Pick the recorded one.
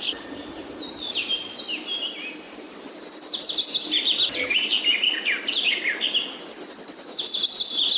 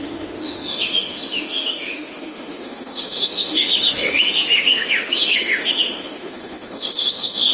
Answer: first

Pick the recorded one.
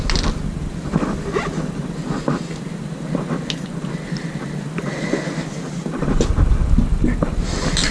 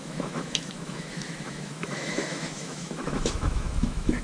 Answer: first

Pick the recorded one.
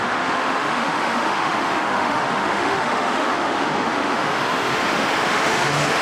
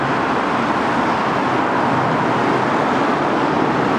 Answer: second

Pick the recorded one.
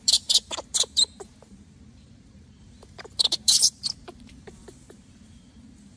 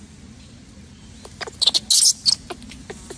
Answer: second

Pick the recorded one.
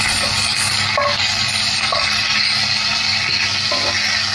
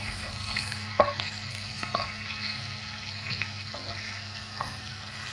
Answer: first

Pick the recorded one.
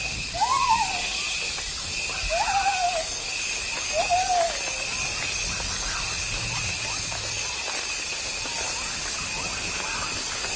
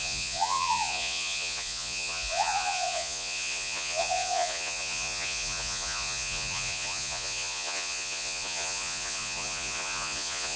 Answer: first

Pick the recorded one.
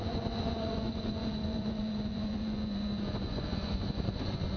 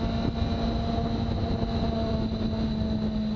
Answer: second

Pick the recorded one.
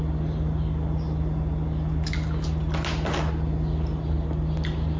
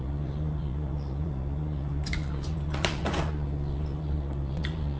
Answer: first